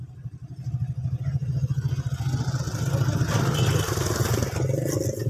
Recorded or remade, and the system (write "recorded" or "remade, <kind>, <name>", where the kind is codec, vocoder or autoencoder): recorded